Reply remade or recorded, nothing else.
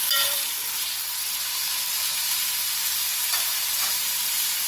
remade